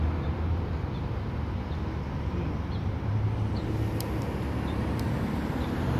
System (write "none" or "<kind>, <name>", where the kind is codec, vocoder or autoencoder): none